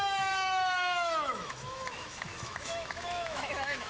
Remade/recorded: remade